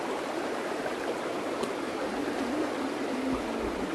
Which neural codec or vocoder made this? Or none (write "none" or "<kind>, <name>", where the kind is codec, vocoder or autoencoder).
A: none